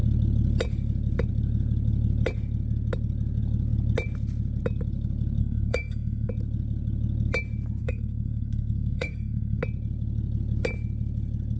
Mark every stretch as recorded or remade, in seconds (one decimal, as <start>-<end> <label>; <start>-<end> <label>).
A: 0.0-5.4 recorded; 5.4-6.3 remade; 6.3-7.8 recorded; 7.8-9.6 remade; 9.6-11.6 recorded